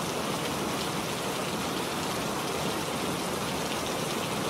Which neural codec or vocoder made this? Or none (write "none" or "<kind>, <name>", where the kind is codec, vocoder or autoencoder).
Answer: none